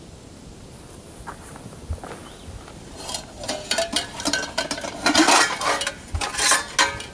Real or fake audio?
real